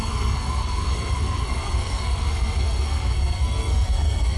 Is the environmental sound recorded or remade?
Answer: remade